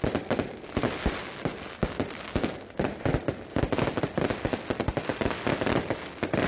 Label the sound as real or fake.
real